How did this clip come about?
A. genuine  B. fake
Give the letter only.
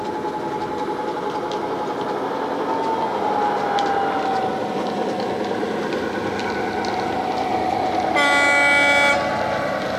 A